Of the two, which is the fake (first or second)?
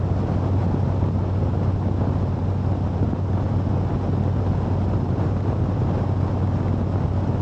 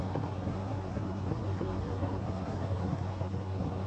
second